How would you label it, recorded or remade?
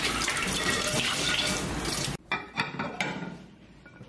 remade